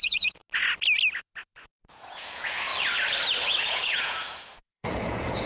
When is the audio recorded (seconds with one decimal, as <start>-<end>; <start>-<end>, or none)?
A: 0.4-1.9; 2.7-3.6